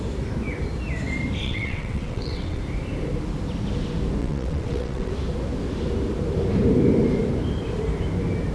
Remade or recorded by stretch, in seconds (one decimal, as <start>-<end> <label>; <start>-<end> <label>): 0.0-1.4 recorded; 1.4-2.6 remade; 2.6-4.2 recorded; 4.2-5.1 remade; 5.1-8.5 recorded